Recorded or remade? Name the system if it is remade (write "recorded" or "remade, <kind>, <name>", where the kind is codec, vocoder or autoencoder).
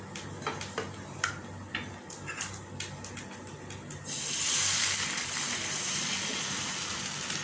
recorded